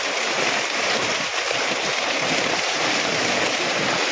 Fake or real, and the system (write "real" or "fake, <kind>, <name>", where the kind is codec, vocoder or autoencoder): real